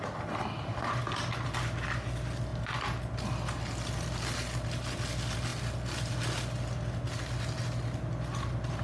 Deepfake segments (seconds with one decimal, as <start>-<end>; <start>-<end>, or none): none